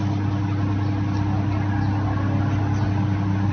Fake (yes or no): no